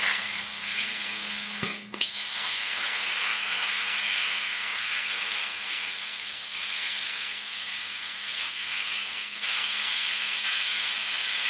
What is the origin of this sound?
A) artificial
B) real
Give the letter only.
A